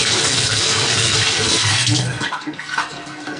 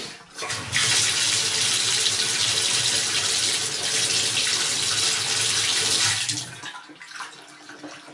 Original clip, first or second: second